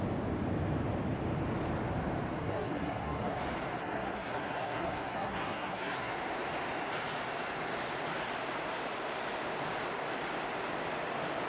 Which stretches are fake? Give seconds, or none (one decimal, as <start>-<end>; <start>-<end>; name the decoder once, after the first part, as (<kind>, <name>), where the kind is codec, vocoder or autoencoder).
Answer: 2.4-3.4 (codec, SNAC); 3.8-6.1